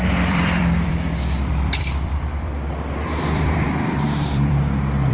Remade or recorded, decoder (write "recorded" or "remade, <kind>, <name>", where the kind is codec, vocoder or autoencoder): remade, vocoder, BigVGAN v2